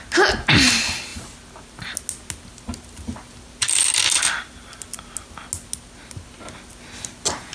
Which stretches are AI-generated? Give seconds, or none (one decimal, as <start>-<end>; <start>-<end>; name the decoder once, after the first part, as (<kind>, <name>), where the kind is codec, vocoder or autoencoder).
none